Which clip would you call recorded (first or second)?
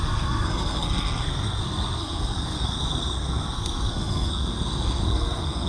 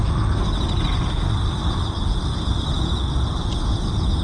second